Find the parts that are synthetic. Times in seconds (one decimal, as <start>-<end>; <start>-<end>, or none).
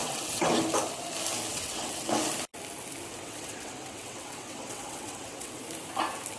0.0-0.5; 1.5-2.3; 3.1-5.6